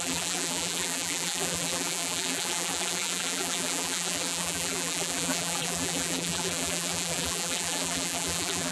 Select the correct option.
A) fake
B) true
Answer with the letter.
A